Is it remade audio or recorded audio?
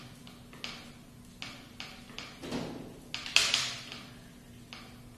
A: recorded